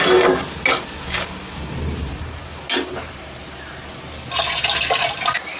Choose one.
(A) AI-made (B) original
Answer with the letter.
B